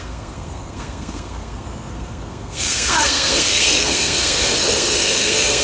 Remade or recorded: remade